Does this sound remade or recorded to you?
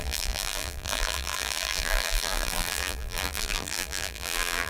remade